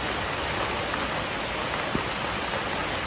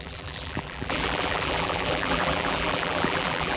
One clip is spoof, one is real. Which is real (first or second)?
first